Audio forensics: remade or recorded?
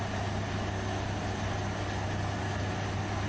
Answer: recorded